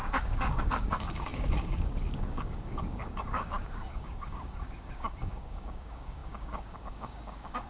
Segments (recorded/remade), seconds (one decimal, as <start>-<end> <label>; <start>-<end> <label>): 0.0-7.7 remade

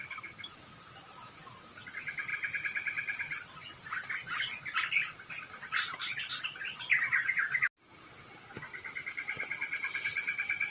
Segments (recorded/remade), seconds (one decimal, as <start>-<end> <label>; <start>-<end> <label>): 0.0-10.7 recorded

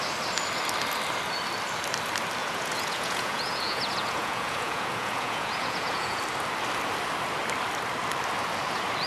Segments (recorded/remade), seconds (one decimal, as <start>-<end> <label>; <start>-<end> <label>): 0.0-2.4 recorded; 2.4-6.2 remade; 6.2-9.1 recorded

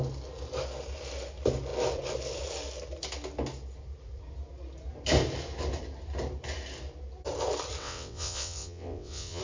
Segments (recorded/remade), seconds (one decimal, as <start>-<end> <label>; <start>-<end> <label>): 0.0-7.8 recorded; 7.8-9.4 remade